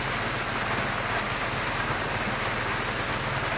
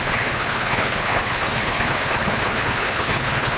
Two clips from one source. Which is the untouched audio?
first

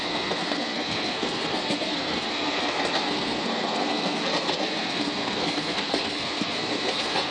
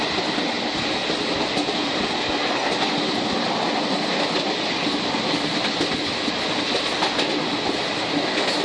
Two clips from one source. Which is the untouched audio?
second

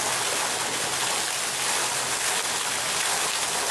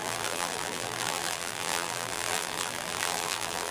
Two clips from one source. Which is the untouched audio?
first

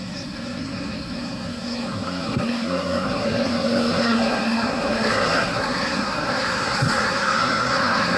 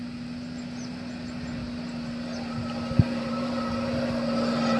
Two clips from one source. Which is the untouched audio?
second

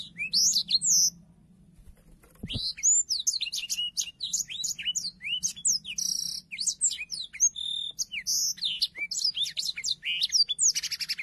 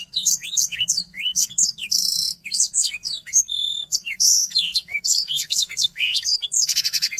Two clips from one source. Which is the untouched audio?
first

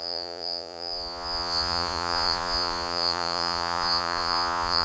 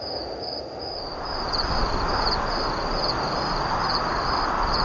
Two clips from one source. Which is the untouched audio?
second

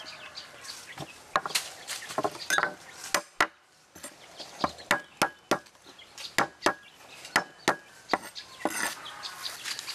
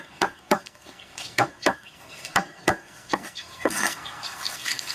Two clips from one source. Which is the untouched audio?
first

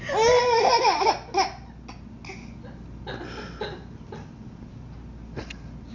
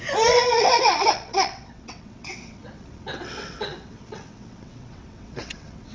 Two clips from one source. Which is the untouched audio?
first